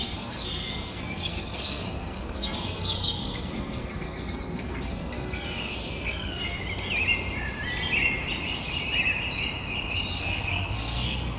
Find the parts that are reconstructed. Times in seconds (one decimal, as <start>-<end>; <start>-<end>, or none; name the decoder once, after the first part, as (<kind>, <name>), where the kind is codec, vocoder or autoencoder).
0.0-6.6 (codec, SNAC); 10.1-11.4